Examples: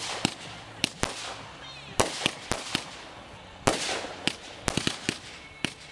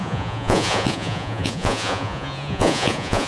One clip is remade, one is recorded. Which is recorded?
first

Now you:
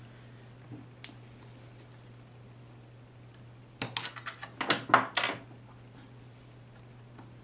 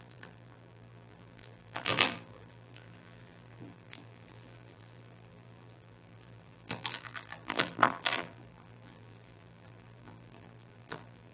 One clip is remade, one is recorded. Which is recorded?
first